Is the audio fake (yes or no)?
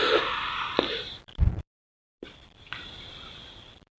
yes